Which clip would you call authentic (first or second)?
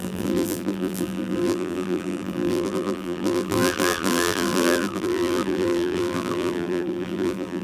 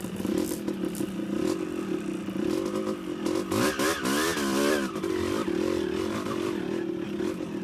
second